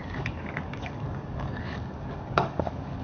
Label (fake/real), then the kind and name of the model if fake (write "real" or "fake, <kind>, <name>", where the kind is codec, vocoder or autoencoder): fake, codec, DAC